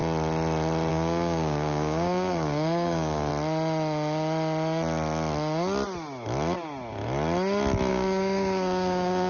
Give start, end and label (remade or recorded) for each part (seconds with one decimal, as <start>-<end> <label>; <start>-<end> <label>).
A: 0.0-0.9 recorded; 0.9-3.3 remade; 3.3-7.9 recorded; 7.9-9.3 remade